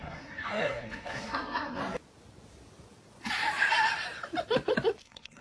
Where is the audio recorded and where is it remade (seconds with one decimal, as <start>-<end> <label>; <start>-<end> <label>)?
0.0-1.8 remade; 1.8-5.0 recorded; 5.0-5.4 remade